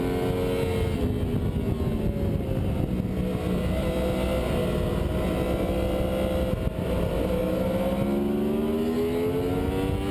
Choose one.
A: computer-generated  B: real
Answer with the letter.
B